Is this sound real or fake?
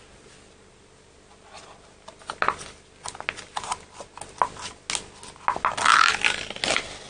real